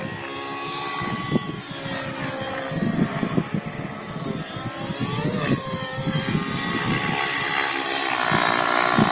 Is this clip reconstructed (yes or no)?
no